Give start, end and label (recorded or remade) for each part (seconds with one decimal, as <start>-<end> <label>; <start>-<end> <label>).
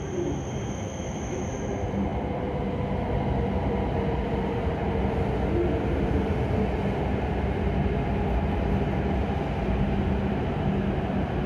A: 0.0-11.5 recorded